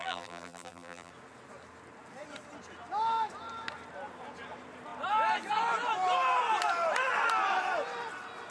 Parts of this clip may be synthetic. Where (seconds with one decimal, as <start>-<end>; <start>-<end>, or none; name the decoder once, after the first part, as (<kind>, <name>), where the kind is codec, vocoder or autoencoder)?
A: 0.0-1.1 (vocoder, BigVGAN v2)